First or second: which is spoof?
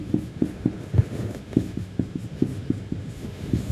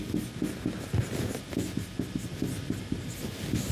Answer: first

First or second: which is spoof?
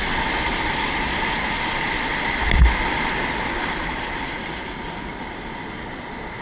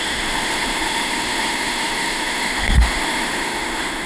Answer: second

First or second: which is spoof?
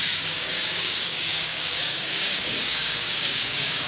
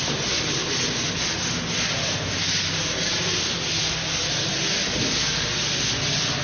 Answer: first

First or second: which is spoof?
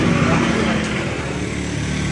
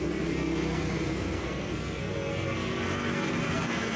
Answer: second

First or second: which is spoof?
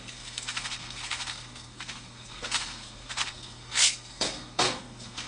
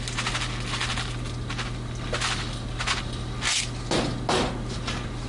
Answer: first